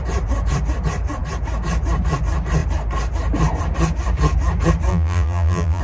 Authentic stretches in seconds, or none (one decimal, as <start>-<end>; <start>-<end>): 0.0-4.9